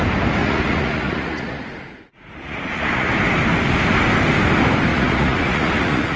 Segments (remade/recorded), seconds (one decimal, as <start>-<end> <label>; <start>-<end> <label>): 0.0-0.4 recorded; 0.4-3.1 remade; 3.1-4.9 recorded; 4.9-6.2 remade